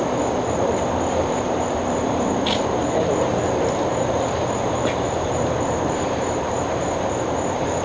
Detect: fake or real fake